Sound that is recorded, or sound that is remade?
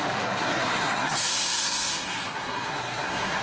remade